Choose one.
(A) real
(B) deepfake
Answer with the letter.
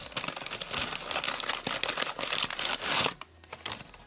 A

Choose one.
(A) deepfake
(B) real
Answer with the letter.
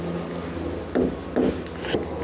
B